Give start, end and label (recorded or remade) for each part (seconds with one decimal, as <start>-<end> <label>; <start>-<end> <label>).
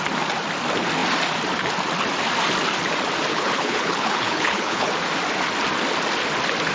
0.0-3.3 recorded; 3.3-4.9 remade; 4.9-6.7 recorded